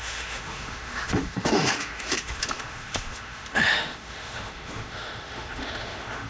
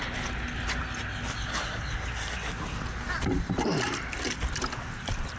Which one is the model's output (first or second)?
first